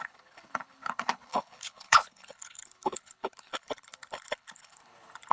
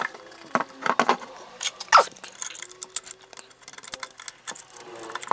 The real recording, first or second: second